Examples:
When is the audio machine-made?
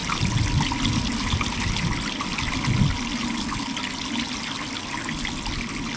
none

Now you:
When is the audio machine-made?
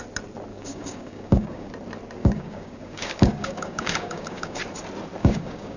0.5-1.7; 2.2-4.6; 5.2-5.8